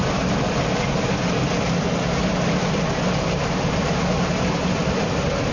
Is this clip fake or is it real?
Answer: real